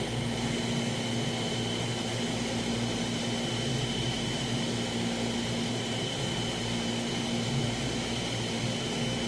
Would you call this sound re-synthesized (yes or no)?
no